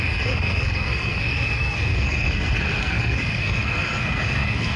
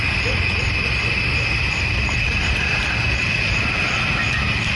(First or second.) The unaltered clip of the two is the second